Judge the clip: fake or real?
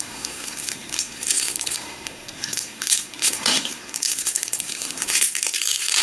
fake